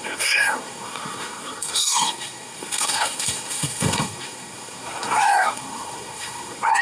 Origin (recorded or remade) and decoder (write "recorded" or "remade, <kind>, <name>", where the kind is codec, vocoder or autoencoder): remade, codec, SNAC